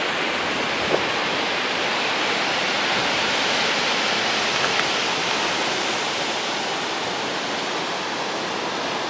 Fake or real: real